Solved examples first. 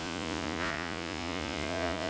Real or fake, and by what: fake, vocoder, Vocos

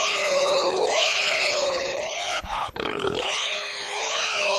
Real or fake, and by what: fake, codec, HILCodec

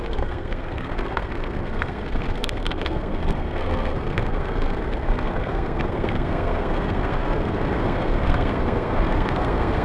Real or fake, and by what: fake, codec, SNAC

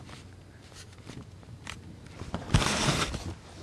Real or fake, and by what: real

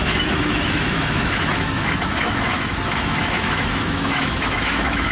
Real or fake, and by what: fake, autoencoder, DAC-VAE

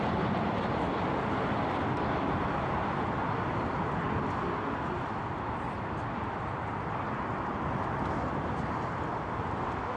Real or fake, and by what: real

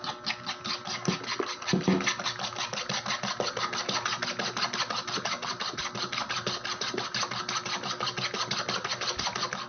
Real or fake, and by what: real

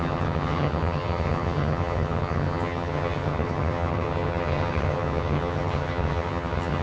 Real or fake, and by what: fake, vocoder, HiFi-GAN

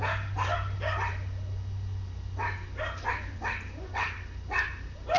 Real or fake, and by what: real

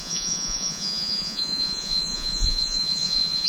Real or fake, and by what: fake, vocoder, Vocos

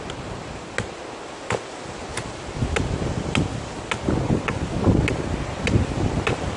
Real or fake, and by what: real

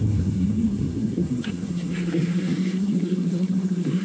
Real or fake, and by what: fake, codec, SNAC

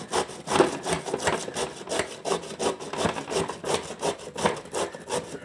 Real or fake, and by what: real